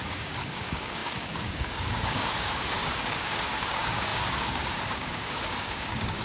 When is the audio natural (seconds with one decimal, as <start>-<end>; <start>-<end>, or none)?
none